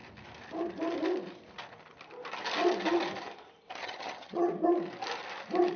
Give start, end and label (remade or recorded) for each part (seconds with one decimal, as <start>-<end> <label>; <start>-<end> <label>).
0.0-3.8 recorded; 3.8-4.5 remade; 4.5-5.8 recorded